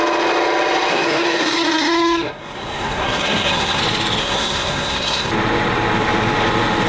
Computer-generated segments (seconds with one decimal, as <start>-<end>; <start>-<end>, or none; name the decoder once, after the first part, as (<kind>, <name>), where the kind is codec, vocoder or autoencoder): 0.9-3.8 (codec, SNAC); 4.2-5.3